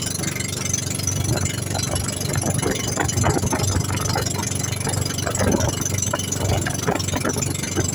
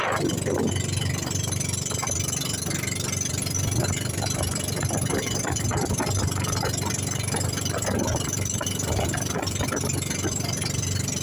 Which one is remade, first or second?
second